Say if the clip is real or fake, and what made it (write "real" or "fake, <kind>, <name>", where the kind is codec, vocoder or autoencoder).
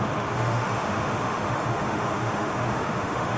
fake, autoencoder, DAC-VAE